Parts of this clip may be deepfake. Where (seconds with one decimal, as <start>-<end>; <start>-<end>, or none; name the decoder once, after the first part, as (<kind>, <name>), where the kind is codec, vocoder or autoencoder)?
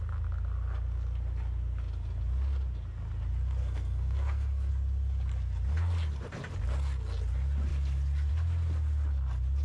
3.6-4.7 (codec, SNAC)